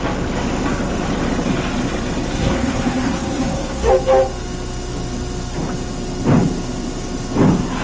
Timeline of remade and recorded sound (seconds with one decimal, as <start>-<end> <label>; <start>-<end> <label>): 0.0-2.3 recorded; 2.3-3.9 remade; 3.9-7.8 recorded